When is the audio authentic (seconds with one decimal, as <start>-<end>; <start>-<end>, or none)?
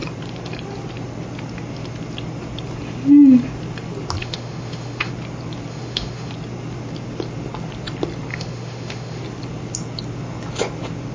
0.0-4.2; 5.1-5.7; 6.3-8.3; 9.2-11.1